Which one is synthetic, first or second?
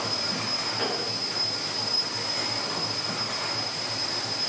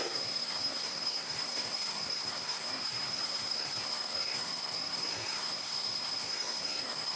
second